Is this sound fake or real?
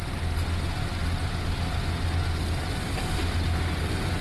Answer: real